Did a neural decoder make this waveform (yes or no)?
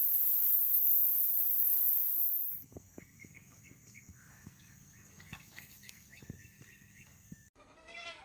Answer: yes